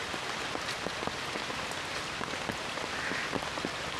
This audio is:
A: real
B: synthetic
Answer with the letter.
A